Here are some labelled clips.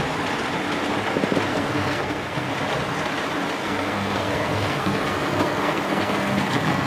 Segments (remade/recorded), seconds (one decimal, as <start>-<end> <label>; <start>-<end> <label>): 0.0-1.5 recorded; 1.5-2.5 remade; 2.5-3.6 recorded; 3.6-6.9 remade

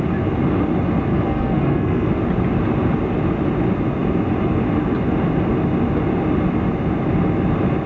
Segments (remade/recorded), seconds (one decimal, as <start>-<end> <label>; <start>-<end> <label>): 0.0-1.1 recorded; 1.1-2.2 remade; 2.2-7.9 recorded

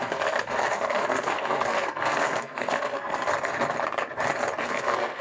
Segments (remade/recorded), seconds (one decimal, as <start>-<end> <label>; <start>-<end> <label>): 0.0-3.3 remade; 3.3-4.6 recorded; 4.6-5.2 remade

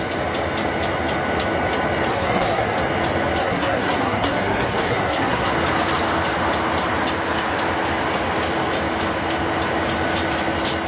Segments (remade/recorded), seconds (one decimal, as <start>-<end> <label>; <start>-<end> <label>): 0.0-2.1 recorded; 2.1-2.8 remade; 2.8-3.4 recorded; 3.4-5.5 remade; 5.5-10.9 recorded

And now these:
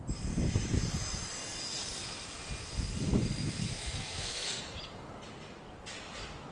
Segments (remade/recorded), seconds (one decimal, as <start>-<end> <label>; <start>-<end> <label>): 0.0-3.6 recorded; 3.6-4.6 remade; 4.6-6.5 recorded